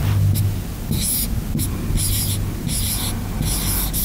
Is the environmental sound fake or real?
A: real